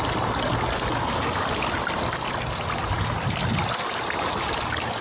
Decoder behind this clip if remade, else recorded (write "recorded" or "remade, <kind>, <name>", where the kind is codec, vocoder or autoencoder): recorded